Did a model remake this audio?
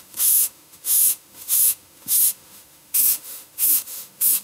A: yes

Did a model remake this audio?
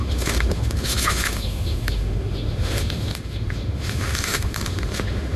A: yes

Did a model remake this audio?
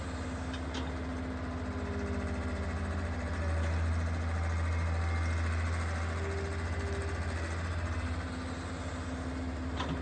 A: no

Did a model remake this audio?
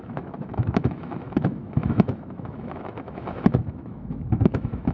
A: yes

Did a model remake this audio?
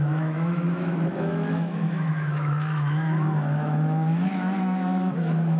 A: yes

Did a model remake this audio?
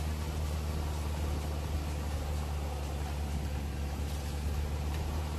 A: no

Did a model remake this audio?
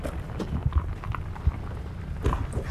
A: no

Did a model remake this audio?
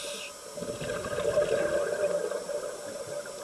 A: no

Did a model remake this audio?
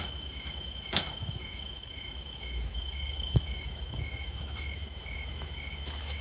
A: yes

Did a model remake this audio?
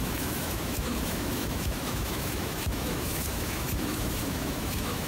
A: yes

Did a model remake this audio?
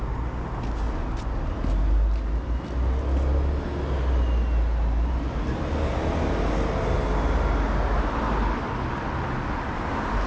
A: no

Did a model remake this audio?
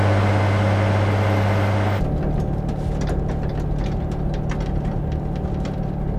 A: no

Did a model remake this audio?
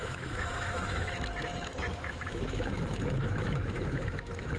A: yes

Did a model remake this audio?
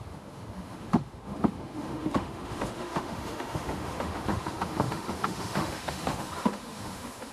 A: yes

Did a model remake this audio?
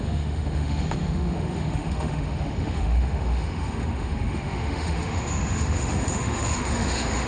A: yes